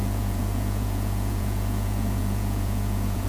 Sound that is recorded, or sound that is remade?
remade